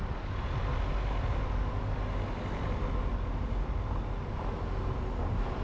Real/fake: real